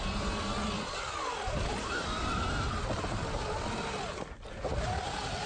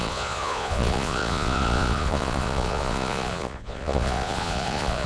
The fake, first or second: second